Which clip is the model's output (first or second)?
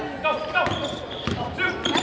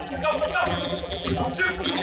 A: second